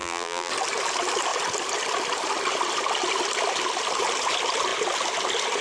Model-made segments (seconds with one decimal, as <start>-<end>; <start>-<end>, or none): 0.0-0.5